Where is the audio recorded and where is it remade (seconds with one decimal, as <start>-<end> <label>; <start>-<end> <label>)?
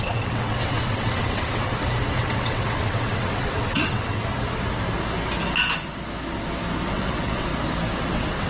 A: 0.0-1.7 remade; 1.7-2.2 recorded; 2.2-4.3 remade; 4.3-6.9 recorded; 6.9-7.5 remade; 7.5-8.1 recorded; 8.1-8.5 remade